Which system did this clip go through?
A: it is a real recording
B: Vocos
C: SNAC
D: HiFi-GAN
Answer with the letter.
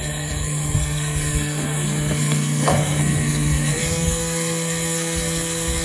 C